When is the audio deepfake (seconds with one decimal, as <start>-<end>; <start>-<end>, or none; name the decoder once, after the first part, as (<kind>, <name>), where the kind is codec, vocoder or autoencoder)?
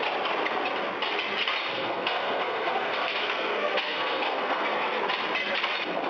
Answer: 1.7-5.0 (codec, SNAC)